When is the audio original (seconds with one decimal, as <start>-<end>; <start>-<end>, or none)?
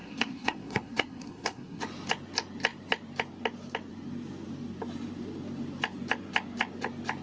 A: 1.8-7.2